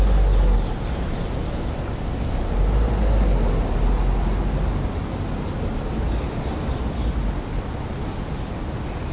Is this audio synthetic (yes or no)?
no